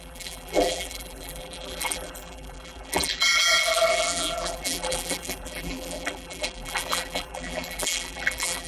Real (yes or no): no